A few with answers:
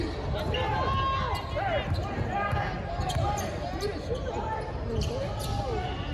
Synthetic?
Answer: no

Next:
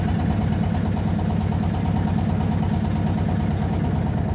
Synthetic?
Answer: no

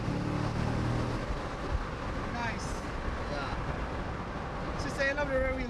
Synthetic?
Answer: no